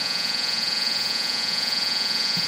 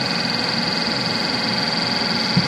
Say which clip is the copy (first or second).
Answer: first